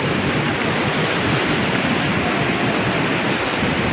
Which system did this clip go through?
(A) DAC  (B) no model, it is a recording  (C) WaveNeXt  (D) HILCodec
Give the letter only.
B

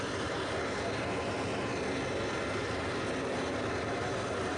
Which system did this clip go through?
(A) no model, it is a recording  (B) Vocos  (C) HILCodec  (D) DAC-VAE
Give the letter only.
A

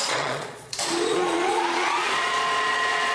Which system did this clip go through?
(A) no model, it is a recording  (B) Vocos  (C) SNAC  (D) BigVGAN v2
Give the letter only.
B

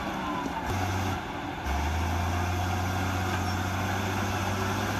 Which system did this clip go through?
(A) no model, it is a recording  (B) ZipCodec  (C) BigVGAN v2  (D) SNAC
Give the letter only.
A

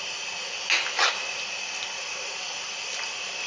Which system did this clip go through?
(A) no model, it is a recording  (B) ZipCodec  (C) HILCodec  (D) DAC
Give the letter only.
A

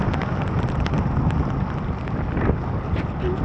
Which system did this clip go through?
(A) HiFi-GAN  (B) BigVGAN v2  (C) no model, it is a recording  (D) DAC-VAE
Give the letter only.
C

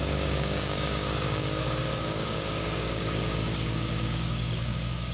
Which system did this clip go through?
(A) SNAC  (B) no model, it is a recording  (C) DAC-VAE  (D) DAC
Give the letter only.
D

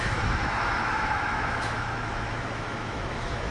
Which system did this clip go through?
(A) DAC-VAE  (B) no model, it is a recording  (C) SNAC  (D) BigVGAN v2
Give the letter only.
A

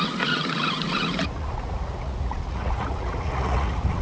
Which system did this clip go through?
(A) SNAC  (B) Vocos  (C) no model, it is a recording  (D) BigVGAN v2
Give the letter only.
B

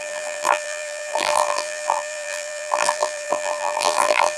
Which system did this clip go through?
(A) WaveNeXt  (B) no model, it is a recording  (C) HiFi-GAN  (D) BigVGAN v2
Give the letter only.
D